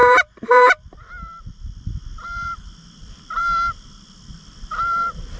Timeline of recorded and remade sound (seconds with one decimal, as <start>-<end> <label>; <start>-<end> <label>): 0.0-5.4 remade